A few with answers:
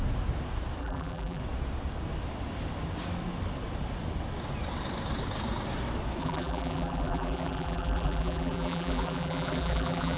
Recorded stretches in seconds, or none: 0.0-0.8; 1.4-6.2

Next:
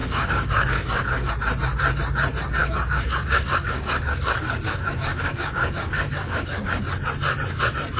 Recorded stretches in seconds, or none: 1.3-2.6; 6.8-8.0